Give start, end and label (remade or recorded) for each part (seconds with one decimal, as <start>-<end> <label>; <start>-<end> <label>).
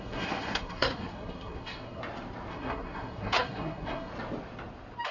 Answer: 0.0-2.0 remade; 2.0-2.5 recorded; 2.5-4.1 remade; 4.1-5.1 recorded